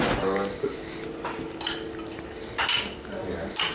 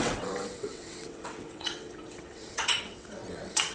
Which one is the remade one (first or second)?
second